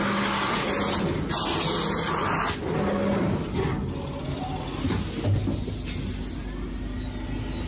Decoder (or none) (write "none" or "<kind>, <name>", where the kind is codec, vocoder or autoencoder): none